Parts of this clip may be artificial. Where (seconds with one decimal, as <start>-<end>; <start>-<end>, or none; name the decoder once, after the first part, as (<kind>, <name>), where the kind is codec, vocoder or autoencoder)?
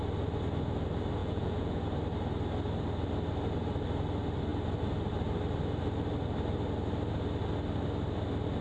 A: 1.2-1.8 (vocoder, Vocos)